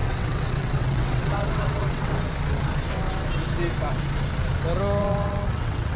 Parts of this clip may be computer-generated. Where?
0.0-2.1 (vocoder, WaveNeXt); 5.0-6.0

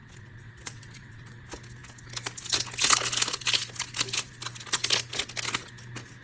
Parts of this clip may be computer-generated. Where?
0.0-1.4 (vocoder, WaveNeXt)

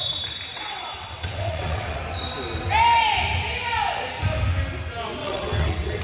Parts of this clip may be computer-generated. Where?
0.5-2.0 (vocoder, WaveNeXt); 5.2-6.0

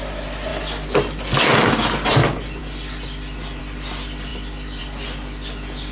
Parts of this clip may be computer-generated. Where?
none